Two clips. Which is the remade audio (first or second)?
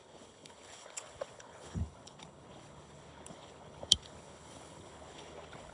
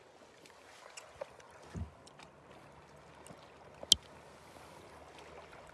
first